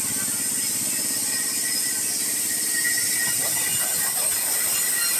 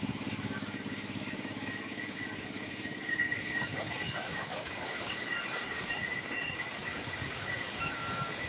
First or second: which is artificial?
second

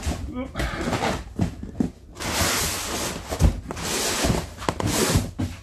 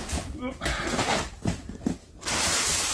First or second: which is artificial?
second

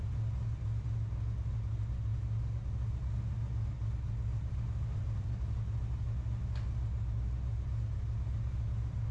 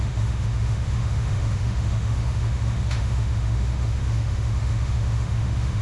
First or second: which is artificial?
second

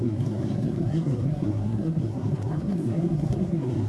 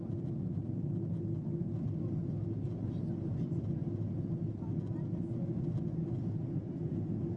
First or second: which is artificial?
first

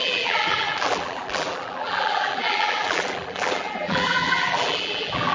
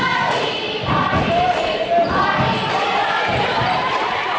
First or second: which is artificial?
first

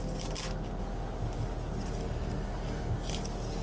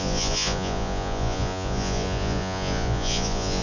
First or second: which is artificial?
second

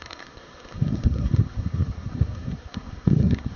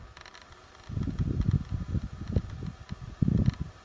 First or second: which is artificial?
first